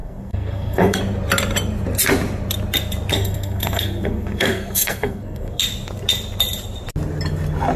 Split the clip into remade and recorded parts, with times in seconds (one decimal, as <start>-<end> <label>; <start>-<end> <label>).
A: 0.0-1.0 remade; 1.0-3.1 recorded; 3.1-5.6 remade; 5.6-7.8 recorded